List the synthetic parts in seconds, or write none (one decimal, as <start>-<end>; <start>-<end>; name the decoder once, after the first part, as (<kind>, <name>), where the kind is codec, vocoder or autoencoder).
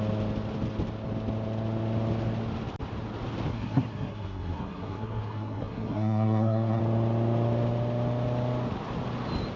3.5-6.8 (codec, SNAC)